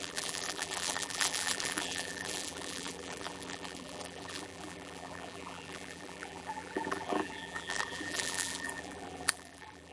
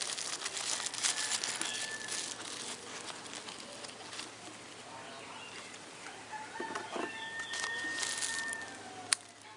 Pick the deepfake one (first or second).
first